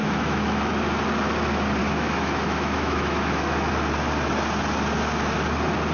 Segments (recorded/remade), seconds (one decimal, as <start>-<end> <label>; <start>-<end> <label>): 0.0-0.7 remade; 0.7-1.8 recorded; 1.8-3.7 remade; 3.7-5.9 recorded